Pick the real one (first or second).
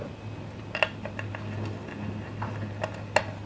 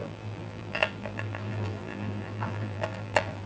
first